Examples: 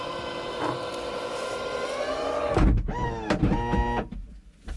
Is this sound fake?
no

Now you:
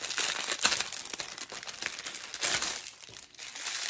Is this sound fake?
no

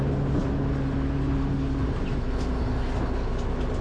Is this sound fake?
no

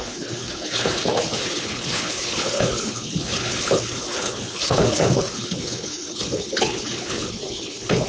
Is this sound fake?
yes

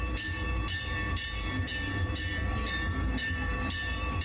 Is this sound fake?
yes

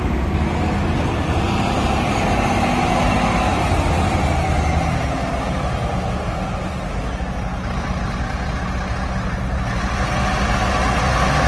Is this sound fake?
no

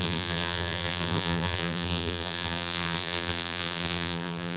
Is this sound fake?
yes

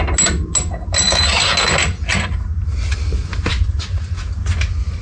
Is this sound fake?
no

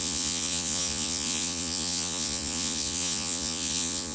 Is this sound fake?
yes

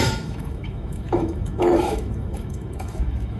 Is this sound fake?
yes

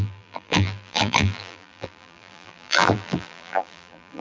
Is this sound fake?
yes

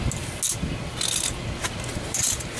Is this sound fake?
no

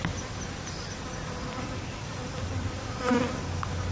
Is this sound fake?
no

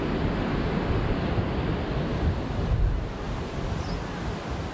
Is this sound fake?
no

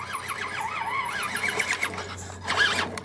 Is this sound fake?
no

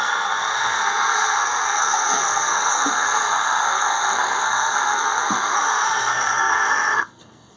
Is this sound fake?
yes